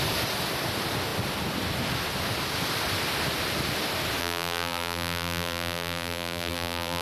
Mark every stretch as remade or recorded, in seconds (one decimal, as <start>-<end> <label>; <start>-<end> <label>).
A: 0.0-4.2 recorded; 4.2-7.0 remade